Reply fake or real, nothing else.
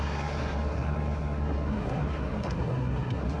fake